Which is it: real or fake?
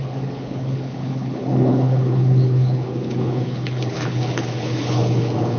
fake